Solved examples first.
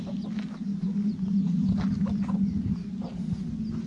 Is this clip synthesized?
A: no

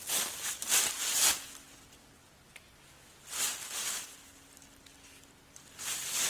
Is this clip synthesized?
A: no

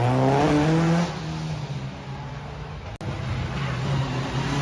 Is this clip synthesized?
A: no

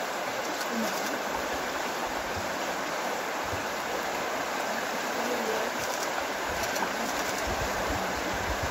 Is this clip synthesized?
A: yes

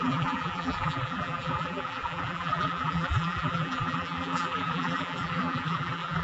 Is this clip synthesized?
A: yes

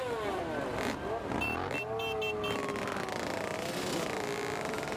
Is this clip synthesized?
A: no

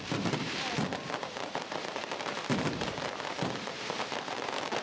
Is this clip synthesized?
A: yes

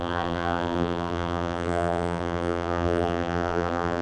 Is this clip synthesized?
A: yes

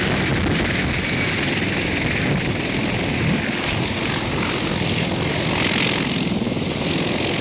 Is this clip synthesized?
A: no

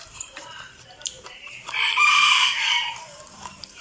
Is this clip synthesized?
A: yes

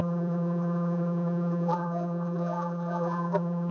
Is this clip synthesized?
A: yes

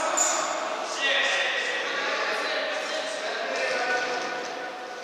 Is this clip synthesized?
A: no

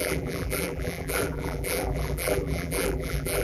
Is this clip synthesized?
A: yes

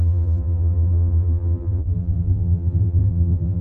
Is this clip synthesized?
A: yes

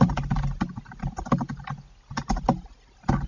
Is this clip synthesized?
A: no